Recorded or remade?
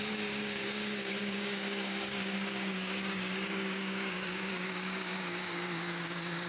remade